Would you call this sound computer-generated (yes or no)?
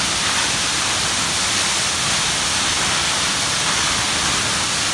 no